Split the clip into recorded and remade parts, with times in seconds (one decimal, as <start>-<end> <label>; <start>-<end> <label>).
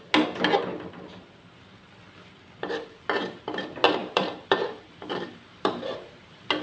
0.0-4.0 recorded; 4.0-6.1 remade; 6.1-6.6 recorded